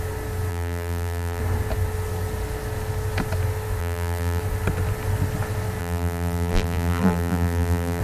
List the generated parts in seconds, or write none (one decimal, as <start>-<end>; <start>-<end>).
0.5-1.4; 3.8-4.4; 5.8-8.0